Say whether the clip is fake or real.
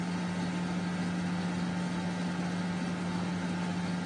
real